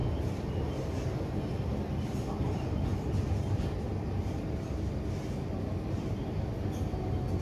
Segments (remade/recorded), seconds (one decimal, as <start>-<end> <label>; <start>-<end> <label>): 0.0-7.4 recorded